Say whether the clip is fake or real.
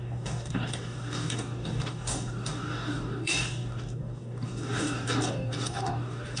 fake